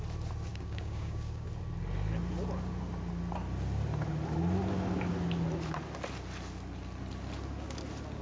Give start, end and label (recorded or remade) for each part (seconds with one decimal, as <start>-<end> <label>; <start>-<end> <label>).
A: 0.0-0.5 recorded; 0.5-1.5 remade; 1.5-8.2 recorded